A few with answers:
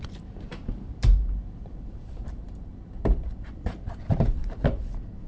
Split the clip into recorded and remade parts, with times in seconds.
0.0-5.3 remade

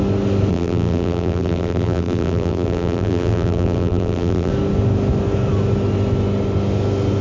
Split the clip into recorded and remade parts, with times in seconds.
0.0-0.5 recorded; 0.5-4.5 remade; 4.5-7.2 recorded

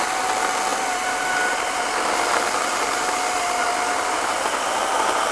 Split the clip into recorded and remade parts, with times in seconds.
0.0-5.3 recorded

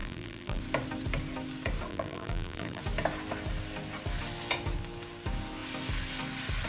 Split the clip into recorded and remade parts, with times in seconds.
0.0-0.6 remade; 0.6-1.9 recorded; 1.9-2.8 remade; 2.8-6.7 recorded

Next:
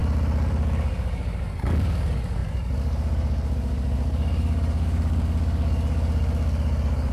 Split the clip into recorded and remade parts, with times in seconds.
0.0-0.5 recorded; 0.5-7.1 remade